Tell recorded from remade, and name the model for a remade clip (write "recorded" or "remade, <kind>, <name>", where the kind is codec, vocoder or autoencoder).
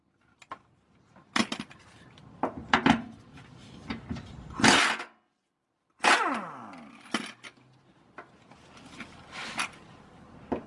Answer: recorded